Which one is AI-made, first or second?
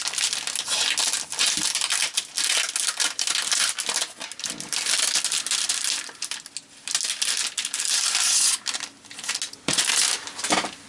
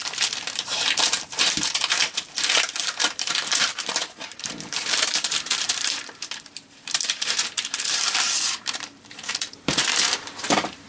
second